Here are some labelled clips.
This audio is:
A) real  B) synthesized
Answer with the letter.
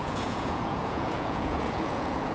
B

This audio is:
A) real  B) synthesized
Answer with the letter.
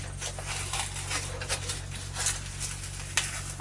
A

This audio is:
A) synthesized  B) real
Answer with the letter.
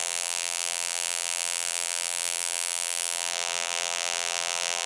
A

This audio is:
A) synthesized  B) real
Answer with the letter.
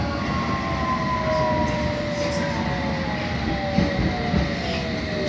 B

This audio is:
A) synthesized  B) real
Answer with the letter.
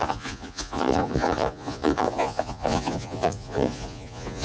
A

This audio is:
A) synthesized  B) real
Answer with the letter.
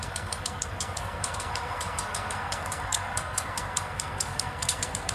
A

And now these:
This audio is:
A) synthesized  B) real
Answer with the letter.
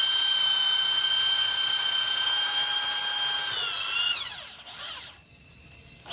B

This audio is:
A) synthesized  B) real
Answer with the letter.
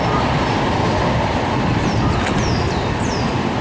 B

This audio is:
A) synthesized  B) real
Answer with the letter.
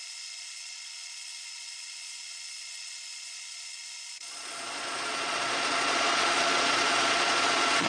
A